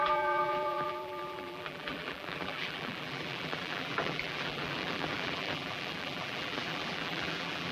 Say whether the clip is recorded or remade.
remade